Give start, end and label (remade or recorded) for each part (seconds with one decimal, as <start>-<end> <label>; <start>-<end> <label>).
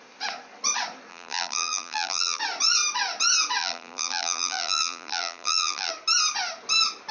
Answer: 0.0-1.1 recorded; 1.1-2.4 remade; 2.4-3.6 recorded; 3.6-5.9 remade; 5.9-7.1 recorded